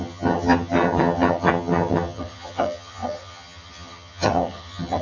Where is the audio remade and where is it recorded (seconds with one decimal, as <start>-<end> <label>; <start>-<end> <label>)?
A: 0.0-5.0 remade